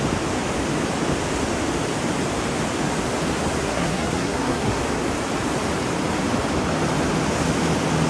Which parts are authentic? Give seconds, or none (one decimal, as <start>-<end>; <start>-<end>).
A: 0.0-3.6; 4.8-8.1